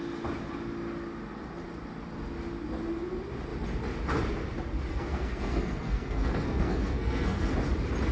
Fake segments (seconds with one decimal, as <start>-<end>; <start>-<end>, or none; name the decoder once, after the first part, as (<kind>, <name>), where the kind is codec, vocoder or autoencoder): 4.9-7.5 (codec, SNAC)